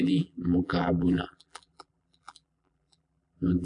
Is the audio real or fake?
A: fake